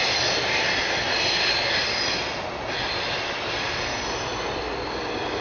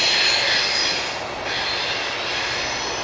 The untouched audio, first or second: second